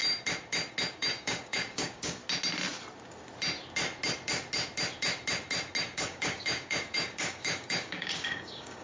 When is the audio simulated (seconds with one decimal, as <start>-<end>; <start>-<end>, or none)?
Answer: 0.9-2.2; 5.8-8.8